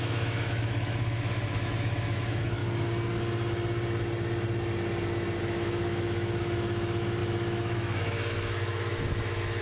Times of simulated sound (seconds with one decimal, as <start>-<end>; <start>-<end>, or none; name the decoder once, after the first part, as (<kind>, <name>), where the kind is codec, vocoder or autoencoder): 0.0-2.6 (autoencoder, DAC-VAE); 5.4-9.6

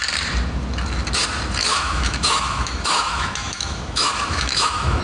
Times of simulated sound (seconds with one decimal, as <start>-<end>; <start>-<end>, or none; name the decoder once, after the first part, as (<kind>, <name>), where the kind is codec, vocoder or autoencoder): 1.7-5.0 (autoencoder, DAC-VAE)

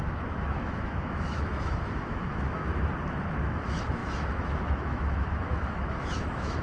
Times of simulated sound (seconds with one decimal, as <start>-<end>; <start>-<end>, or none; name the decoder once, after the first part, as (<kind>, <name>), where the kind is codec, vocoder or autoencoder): 0.0-2.7 (autoencoder, DAC-VAE); 3.4-6.6

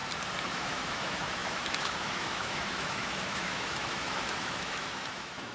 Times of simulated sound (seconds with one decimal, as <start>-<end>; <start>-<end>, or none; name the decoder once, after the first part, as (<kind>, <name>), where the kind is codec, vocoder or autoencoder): 0.5-5.5 (autoencoder, DAC-VAE)